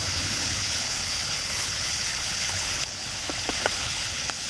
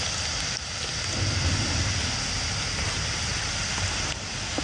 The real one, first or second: second